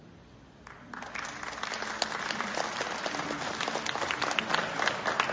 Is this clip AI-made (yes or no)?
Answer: no